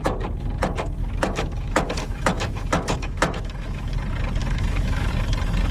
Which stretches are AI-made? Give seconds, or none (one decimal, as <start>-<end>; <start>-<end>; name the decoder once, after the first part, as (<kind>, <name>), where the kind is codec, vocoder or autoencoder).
1.0-3.9 (autoencoder, DAC-VAE); 4.4-5.1